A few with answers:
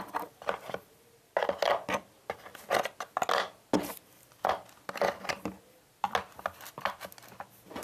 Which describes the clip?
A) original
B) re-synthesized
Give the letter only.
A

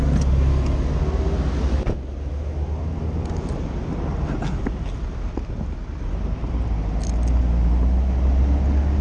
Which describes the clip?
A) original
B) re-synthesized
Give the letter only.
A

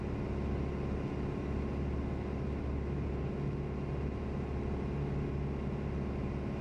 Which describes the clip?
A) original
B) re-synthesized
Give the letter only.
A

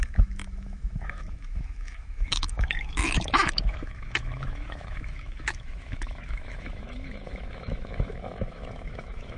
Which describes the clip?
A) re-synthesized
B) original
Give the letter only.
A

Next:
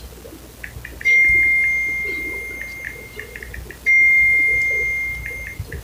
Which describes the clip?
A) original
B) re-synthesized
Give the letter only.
A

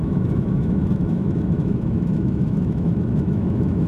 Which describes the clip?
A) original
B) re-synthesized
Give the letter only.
B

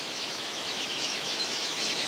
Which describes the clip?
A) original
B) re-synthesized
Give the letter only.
B